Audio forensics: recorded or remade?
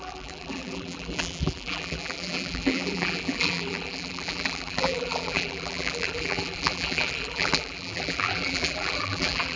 remade